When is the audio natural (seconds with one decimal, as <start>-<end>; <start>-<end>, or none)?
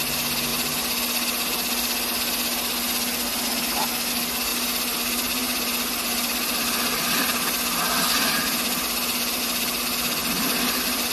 0.0-10.2